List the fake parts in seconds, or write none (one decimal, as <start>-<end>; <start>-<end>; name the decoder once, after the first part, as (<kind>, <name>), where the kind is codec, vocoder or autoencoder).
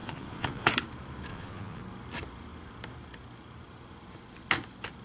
0.0-0.7 (vocoder, Vocos); 1.3-1.8